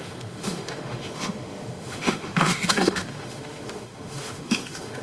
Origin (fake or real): fake